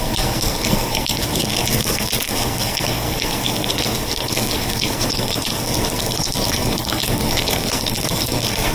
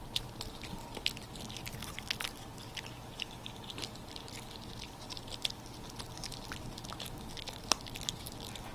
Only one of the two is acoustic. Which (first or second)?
second